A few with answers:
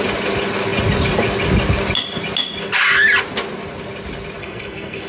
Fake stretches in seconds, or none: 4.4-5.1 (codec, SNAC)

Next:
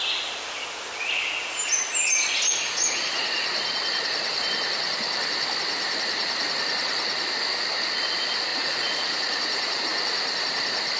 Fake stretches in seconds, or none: 8.5-9.8 (vocoder, Vocos)

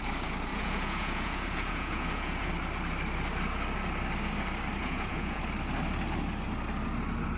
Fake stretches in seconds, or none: 0.5-2.5 (vocoder, Vocos); 4.8-5.4

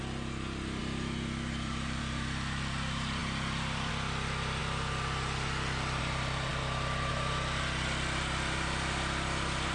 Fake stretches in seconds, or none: 0.0-9.7 (vocoder, BigVGAN v2)

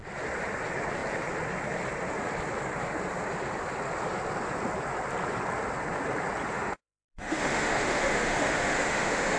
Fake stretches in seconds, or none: 6.5-9.4 (autoencoder, DAC-VAE)

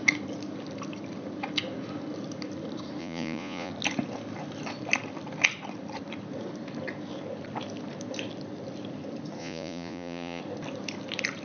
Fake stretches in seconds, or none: 3.0-3.7 (vocoder, Vocos); 9.4-10.4

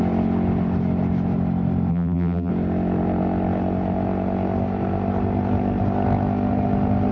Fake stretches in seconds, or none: 1.9-2.5 (vocoder, BigVGAN v2)